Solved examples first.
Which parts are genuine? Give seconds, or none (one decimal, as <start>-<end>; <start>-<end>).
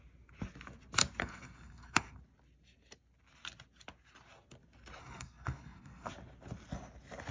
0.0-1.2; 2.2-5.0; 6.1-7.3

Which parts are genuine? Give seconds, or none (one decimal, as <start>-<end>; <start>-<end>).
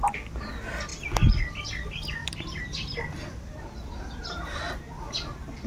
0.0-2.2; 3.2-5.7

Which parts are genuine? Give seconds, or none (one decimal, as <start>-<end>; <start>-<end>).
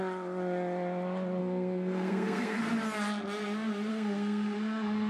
0.0-1.4; 2.6-3.9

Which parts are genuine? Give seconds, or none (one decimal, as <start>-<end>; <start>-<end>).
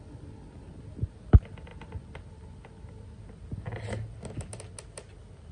0.0-5.5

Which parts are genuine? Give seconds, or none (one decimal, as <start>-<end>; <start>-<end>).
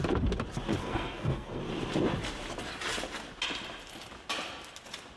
0.0-0.8; 1.6-5.2